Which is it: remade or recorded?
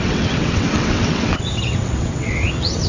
remade